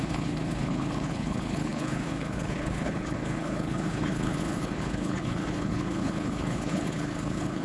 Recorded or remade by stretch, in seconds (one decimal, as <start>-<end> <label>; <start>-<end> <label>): 0.0-7.6 remade